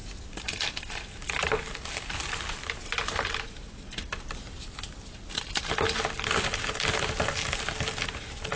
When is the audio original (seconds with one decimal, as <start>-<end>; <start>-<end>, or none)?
1.6-2.8; 3.3-8.6